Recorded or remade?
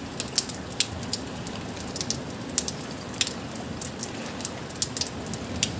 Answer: recorded